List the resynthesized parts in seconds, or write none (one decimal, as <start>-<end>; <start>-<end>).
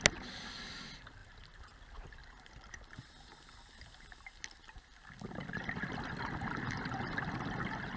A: 1.2-1.8; 2.2-2.8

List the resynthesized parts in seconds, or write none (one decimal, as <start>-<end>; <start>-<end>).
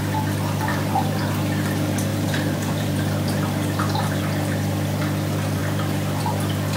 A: 0.7-1.2; 2.1-4.2; 5.6-6.2